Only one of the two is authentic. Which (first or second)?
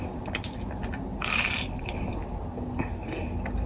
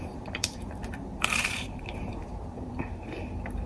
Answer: first